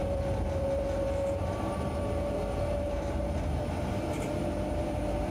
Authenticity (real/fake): fake